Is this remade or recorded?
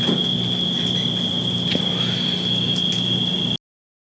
recorded